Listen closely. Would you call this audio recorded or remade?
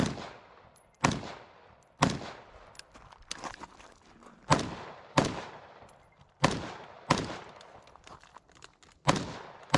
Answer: recorded